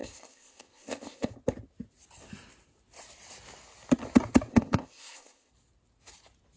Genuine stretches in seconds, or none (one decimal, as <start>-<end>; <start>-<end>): 1.3-4.5; 5.5-6.6